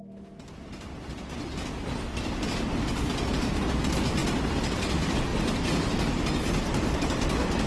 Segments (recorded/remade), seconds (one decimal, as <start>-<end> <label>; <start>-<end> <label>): 0.0-7.7 recorded